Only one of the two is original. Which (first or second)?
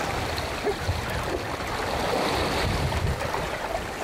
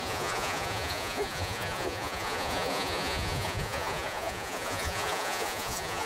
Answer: first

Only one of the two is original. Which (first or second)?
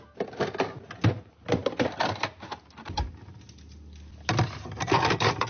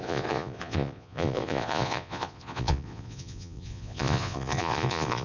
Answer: first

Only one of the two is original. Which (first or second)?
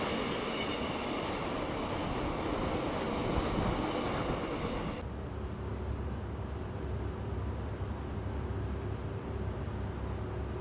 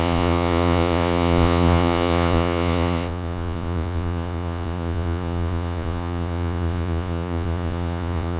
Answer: first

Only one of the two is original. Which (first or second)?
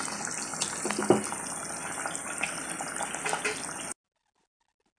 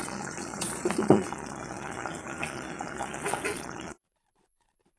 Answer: first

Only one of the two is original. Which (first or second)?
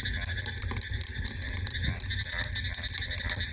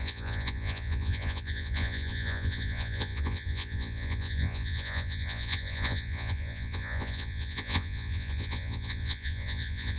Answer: first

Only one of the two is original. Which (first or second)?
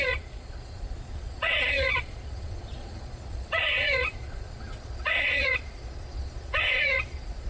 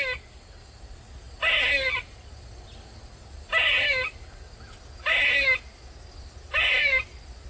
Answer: second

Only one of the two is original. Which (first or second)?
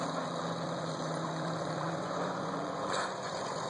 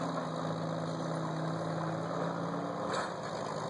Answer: second